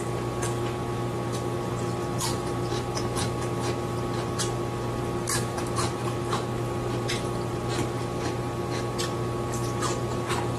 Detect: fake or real fake